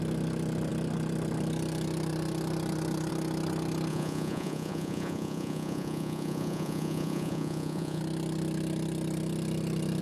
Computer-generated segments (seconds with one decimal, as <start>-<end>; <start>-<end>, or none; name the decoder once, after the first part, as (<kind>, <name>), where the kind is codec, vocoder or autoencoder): 3.9-8.0 (vocoder, Vocos)